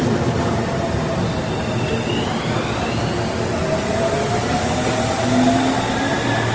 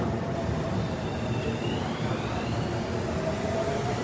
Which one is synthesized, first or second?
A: second